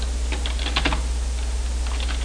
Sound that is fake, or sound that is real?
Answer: real